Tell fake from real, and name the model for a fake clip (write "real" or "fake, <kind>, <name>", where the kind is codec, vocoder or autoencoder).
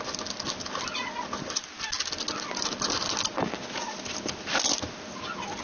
real